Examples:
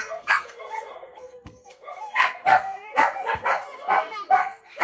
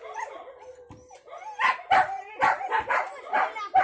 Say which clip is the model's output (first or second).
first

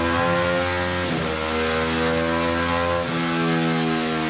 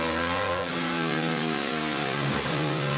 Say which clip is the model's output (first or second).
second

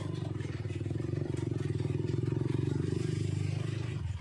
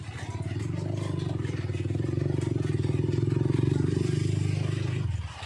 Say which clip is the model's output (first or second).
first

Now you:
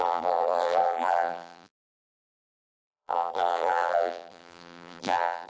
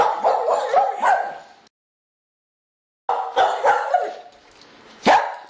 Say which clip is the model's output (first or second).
first